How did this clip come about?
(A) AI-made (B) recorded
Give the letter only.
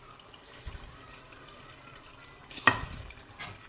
B